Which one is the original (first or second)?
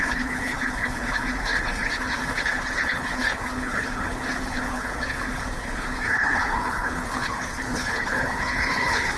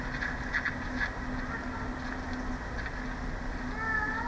second